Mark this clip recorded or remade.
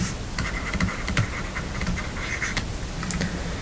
recorded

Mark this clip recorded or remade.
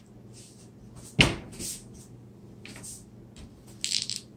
recorded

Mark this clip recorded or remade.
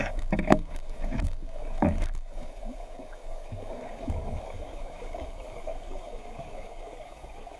remade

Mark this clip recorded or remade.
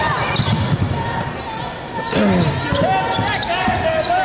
recorded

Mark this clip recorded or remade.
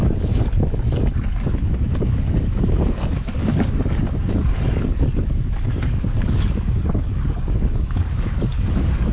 remade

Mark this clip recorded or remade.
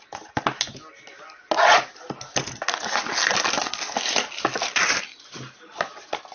recorded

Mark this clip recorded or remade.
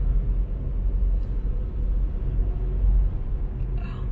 recorded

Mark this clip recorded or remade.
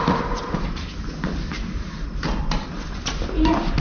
recorded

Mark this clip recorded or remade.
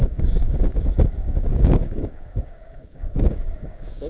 remade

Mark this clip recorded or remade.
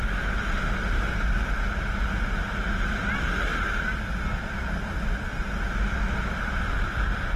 recorded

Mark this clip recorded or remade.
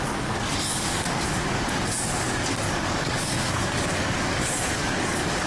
remade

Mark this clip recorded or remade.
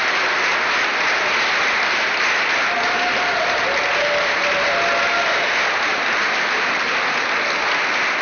recorded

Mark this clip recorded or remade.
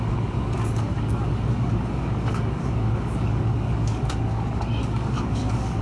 remade